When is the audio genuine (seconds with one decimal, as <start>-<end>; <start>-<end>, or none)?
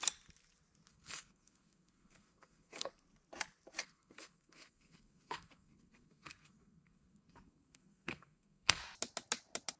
0.0-0.9; 2.9-3.8; 8.8-9.8